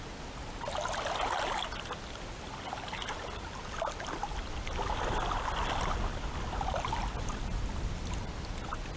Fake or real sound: real